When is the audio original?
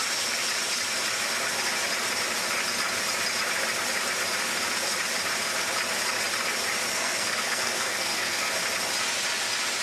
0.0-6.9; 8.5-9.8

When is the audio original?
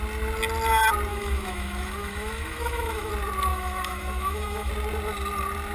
0.0-1.1; 3.1-3.5; 4.7-5.7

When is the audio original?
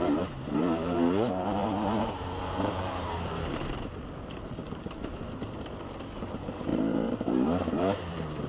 5.1-6.2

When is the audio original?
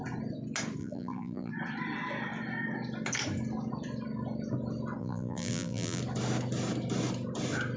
0.0-0.8; 1.5-5.0; 6.0-7.8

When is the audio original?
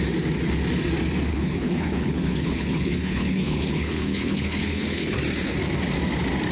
0.0-1.3; 5.2-6.5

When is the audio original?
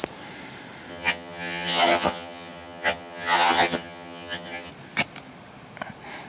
0.0-0.9; 4.7-6.3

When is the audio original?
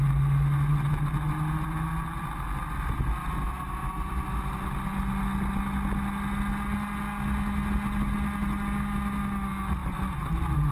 0.0-10.7